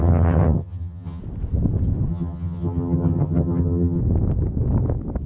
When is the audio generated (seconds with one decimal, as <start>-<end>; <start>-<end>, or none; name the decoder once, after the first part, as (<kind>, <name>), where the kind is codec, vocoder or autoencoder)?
0.0-1.2 (vocoder, HiFi-GAN); 2.1-4.0